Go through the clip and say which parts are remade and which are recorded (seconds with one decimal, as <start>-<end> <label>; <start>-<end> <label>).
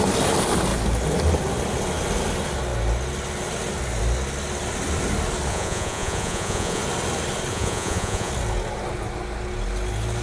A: 0.0-5.5 recorded; 5.5-6.8 remade; 6.8-7.5 recorded; 7.5-8.3 remade; 8.3-10.2 recorded